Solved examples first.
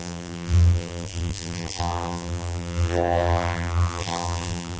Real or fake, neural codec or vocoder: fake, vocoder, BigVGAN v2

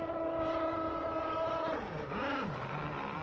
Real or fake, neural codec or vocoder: real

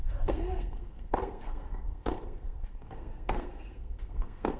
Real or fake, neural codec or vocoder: fake, codec, SNAC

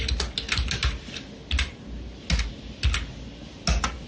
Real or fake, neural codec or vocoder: real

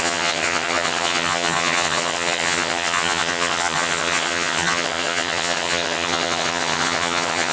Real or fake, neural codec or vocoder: fake, vocoder, HiFi-GAN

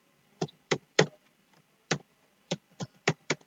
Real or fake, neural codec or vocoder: fake, vocoder, BigVGAN v2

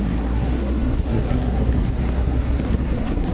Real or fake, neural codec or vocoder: fake, codec, SNAC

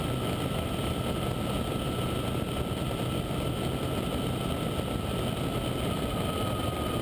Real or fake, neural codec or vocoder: real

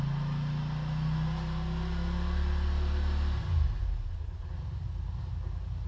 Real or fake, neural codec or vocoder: real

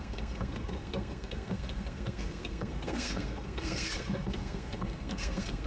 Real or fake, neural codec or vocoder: fake, codec, SNAC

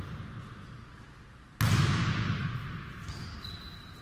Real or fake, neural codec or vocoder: real